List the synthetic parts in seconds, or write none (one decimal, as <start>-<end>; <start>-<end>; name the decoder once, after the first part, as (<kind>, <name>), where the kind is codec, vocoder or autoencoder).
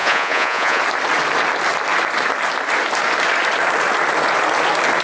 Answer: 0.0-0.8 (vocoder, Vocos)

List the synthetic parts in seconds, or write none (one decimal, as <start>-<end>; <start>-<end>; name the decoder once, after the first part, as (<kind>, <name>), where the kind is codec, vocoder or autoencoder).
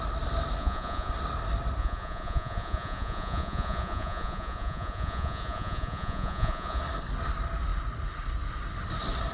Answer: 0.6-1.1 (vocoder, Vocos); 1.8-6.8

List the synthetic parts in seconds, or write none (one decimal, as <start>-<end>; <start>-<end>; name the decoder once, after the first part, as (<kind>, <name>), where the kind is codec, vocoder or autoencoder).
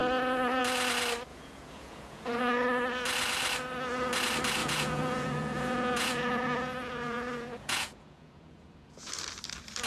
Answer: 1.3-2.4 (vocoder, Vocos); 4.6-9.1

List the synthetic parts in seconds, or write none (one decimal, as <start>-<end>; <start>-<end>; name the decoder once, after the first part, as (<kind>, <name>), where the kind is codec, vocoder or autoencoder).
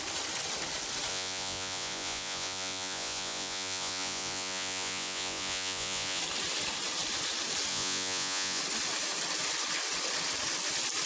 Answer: 1.1-6.2 (vocoder, Vocos); 7.7-8.6